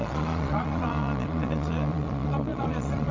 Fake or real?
fake